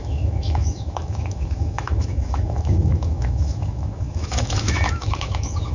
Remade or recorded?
remade